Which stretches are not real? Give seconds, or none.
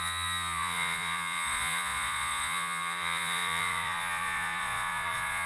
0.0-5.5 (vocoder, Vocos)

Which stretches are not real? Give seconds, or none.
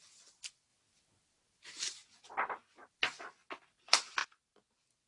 none